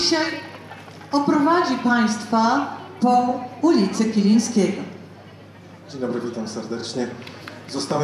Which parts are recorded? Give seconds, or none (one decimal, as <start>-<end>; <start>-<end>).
0.0-3.3; 4.4-6.8